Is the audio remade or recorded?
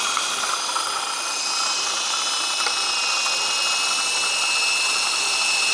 recorded